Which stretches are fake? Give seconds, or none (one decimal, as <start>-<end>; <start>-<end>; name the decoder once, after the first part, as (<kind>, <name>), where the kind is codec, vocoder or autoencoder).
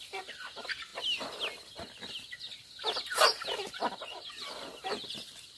none